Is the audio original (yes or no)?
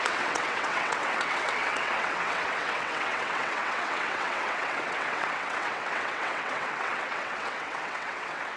no